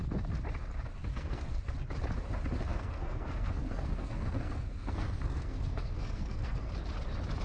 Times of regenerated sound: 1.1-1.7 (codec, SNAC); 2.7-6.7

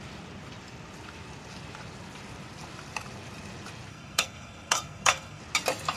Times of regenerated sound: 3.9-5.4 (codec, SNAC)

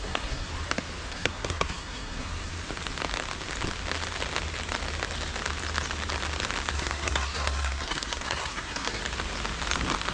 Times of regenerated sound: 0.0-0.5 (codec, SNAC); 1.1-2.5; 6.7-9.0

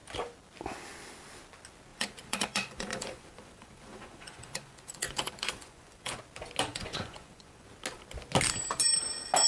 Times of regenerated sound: 1.9-6.2 (vocoder, Vocos); 6.7-7.7

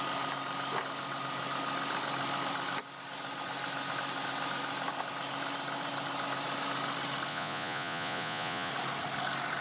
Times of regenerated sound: 7.3-8.7 (vocoder, Vocos)

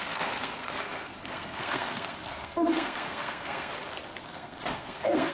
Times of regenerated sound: 0.0-3.7 (codec, SNAC); 4.2-5.3